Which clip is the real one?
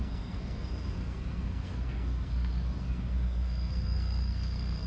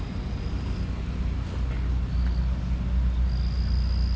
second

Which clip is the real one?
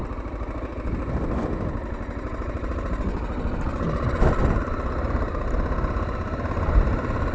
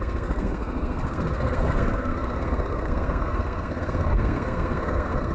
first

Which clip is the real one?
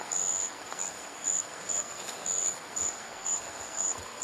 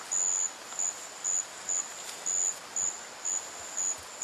second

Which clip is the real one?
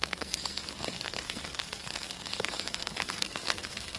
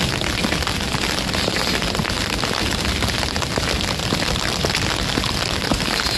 second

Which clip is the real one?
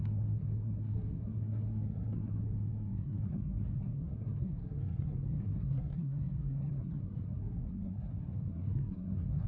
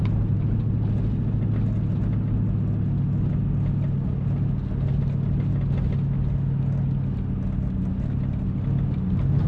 second